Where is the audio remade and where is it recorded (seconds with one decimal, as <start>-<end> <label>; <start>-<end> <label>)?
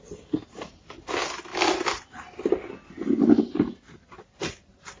0.0-5.0 recorded